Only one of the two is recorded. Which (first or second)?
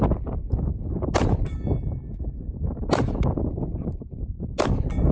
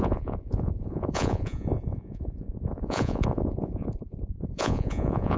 first